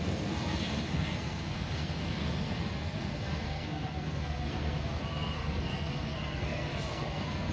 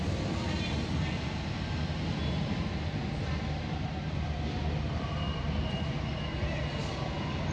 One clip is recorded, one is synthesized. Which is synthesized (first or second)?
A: first